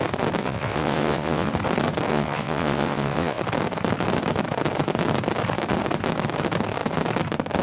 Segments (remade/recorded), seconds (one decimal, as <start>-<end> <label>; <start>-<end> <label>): 0.0-0.4 recorded; 0.4-1.5 remade; 1.5-2.1 recorded; 2.1-3.4 remade; 3.4-7.6 recorded

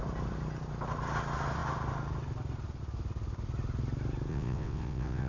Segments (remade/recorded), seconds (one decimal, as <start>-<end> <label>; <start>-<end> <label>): 0.0-4.3 recorded; 4.3-5.3 remade